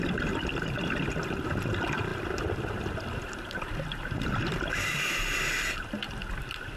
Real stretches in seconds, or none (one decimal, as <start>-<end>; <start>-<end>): 0.0-2.1; 5.8-6.8